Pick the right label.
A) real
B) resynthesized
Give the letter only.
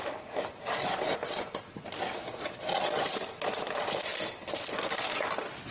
A